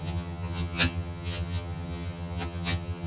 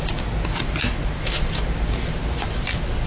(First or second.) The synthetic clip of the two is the first